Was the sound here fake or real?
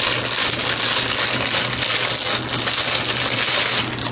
real